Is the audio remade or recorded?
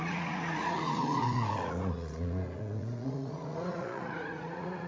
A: remade